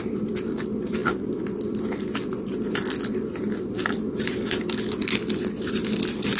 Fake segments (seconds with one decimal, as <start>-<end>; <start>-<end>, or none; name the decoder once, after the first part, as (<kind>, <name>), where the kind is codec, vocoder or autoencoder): none